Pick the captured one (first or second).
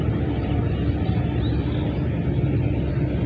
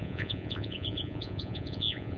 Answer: first